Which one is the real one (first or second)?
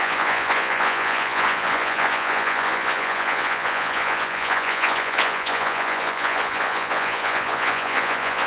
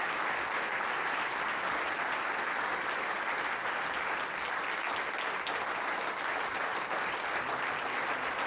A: second